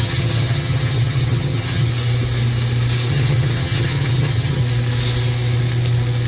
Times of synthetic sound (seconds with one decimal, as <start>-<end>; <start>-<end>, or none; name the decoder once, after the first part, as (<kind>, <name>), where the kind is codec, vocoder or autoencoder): 0.0-1.9 (vocoder, HiFi-GAN); 3.1-4.6